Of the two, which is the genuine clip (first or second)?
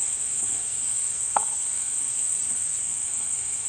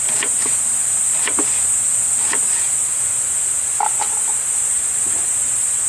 second